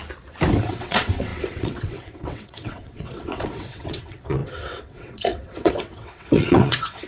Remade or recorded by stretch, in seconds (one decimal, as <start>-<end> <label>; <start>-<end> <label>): 0.0-0.6 recorded; 0.6-7.1 remade